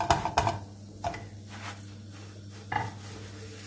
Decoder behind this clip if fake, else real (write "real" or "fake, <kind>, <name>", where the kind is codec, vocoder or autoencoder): real